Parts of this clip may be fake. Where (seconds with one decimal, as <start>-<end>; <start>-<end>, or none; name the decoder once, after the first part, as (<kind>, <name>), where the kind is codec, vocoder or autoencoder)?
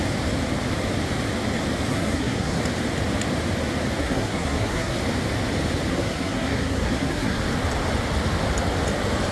1.9-2.6 (codec, SNAC); 4.0-5.0; 5.9-7.4